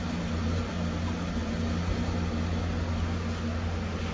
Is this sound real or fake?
real